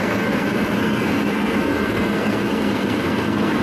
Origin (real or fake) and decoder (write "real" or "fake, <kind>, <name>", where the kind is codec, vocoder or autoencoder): fake, codec, SNAC